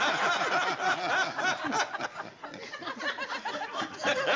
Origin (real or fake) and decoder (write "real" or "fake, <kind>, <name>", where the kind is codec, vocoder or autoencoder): real